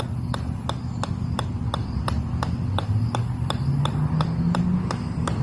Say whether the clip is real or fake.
real